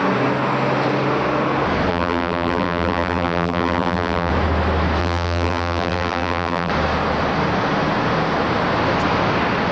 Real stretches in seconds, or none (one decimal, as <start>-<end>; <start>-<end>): 0.0-1.9; 4.3-5.0; 6.7-9.7